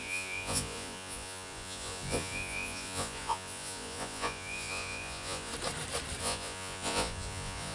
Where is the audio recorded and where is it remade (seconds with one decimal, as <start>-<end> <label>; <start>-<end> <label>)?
0.0-5.5 remade; 5.5-6.2 recorded; 6.2-7.7 remade